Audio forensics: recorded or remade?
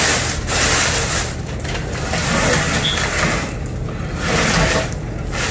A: recorded